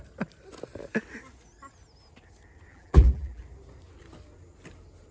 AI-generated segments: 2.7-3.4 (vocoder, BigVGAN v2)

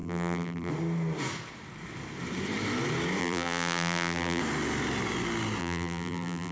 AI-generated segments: 0.0-0.7 (vocoder, BigVGAN v2); 3.2-4.4; 5.6-6.5

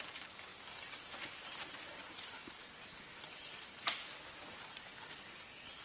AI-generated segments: 0.0-0.5 (vocoder, BigVGAN v2); 1.3-2.4; 4.5-4.9

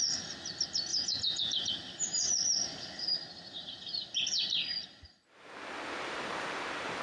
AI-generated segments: 0.9-1.7 (vocoder, Vocos)

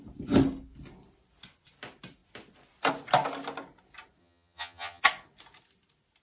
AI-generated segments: 4.2-5.0 (vocoder, HiFi-GAN)

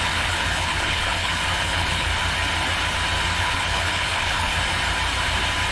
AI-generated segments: 0.0-2.1 (codec, HILCodec); 3.4-4.5

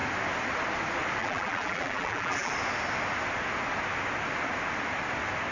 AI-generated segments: 1.2-2.5 (vocoder, BigVGAN v2)